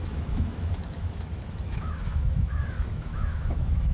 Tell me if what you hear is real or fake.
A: fake